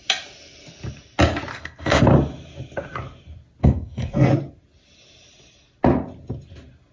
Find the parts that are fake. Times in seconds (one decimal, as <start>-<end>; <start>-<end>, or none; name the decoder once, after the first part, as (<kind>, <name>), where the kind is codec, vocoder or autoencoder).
1.5-2.0 (codec, SNAC); 3.6-4.3